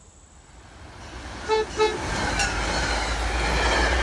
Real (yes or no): yes